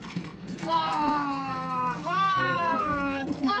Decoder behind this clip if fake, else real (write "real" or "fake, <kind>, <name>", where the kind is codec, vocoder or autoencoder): fake, codec, SNAC